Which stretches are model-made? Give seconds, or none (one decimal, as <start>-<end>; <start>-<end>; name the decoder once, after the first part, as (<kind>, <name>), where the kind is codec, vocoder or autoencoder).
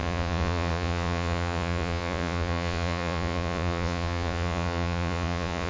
0.0-5.7 (vocoder, Vocos)